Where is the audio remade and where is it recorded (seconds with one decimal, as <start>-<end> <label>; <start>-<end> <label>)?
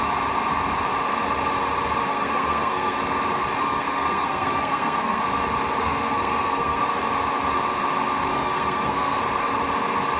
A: 0.0-2.1 recorded; 2.1-3.0 remade; 3.0-3.6 recorded; 3.6-5.2 remade; 5.2-5.8 recorded; 5.8-6.8 remade; 6.8-8.3 recorded; 8.3-9.2 remade; 9.2-10.2 recorded